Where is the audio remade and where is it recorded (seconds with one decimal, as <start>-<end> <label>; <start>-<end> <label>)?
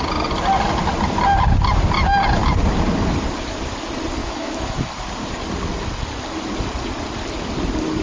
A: 0.0-4.2 recorded; 4.2-4.9 remade; 4.9-8.0 recorded